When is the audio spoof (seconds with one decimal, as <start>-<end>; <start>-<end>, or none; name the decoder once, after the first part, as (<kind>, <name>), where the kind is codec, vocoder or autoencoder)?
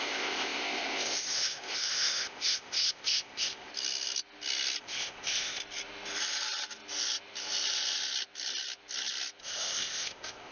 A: 0.0-3.7 (codec, ZipCodec); 4.8-5.6; 9.4-10.5